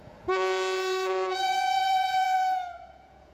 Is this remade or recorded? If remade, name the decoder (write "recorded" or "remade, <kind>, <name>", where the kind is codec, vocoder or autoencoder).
remade, vocoder, Vocos